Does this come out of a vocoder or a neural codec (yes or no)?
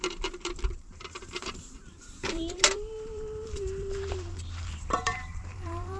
yes